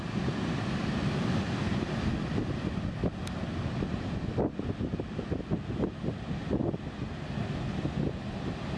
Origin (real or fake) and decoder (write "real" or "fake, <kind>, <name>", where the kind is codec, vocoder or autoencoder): real